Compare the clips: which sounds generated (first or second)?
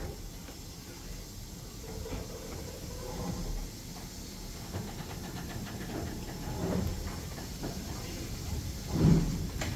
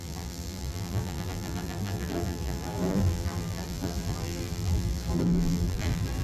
second